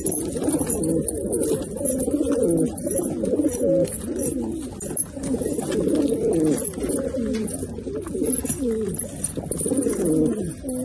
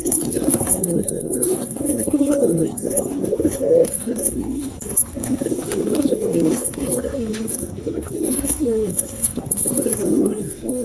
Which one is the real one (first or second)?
first